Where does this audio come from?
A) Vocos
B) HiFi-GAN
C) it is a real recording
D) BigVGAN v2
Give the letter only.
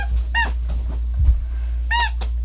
C